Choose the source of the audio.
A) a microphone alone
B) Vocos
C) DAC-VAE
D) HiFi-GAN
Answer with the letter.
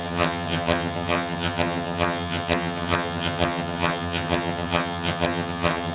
D